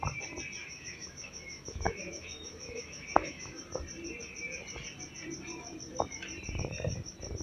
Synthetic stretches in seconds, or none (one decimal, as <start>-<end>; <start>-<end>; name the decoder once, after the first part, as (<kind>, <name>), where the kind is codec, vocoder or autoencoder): 0.6-3.6 (autoencoder, DAC-VAE)